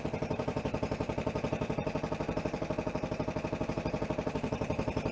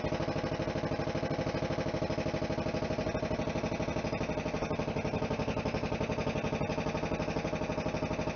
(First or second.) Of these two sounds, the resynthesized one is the first